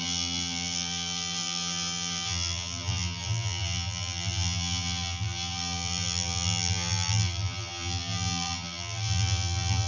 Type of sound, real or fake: fake